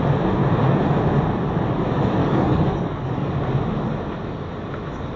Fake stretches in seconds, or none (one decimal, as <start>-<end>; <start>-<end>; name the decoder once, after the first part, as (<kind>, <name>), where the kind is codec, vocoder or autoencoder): 2.2-3.3 (codec, DAC)